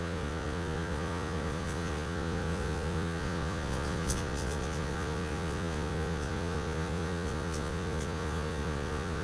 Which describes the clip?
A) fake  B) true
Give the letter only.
A